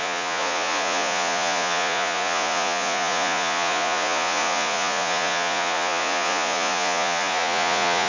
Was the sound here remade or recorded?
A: remade